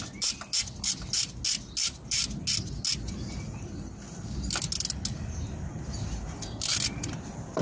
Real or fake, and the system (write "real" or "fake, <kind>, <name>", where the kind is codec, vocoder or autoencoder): real